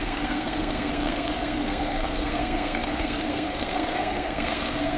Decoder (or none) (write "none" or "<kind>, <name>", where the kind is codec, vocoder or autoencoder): codec, SNAC